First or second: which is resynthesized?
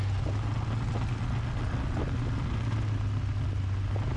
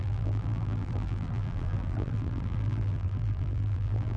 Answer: second